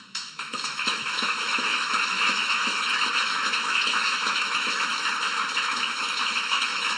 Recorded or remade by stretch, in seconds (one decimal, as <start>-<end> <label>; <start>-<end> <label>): 0.0-7.0 remade